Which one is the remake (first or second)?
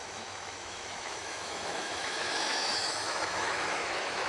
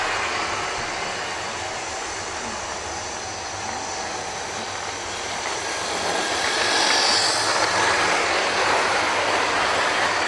first